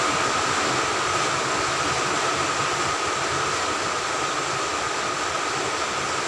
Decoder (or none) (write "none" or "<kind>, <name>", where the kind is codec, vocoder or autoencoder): none